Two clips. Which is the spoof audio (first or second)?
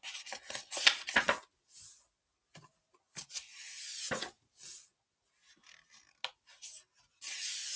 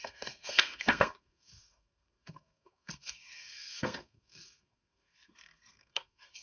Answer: second